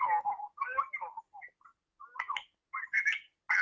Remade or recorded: recorded